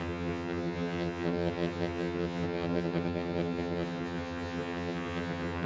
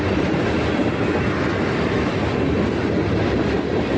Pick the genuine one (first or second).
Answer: second